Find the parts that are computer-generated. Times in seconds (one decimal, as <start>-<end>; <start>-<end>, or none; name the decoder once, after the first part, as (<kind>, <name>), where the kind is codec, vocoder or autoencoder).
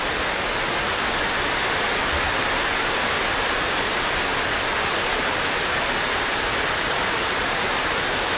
none